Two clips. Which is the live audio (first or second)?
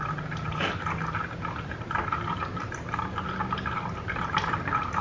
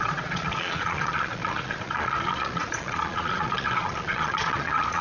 first